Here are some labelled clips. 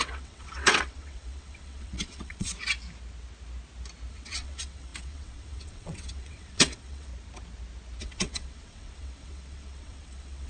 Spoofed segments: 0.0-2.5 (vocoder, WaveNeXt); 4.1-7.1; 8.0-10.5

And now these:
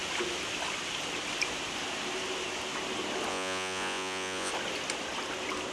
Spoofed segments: 3.3-4.5 (vocoder, Vocos)

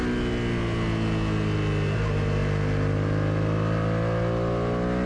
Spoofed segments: none

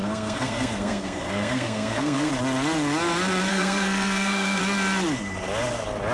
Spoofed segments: 0.0-2.3 (codec, SNAC); 3.5-4.6